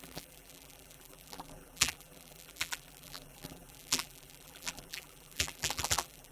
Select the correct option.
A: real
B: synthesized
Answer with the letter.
B